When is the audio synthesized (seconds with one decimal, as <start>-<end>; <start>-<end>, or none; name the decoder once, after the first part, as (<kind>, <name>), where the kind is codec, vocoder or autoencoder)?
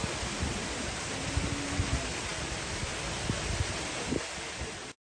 none